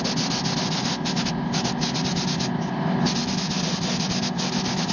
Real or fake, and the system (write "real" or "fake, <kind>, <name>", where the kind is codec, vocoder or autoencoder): real